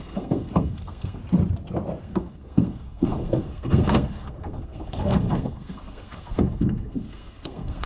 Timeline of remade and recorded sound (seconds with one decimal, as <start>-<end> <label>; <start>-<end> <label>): 0.0-1.2 remade; 1.2-2.0 recorded; 2.0-7.9 remade